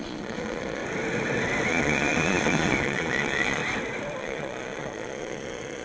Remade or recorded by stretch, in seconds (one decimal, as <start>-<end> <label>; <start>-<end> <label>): 0.0-0.8 remade; 0.8-1.7 recorded; 1.7-3.6 remade; 3.6-4.2 recorded; 4.2-5.8 remade